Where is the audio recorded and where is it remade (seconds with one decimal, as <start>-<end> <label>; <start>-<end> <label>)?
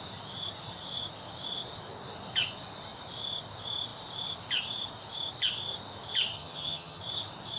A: 0.0-6.3 recorded; 6.3-7.0 remade; 7.0-7.6 recorded